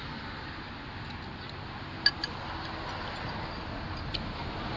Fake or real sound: real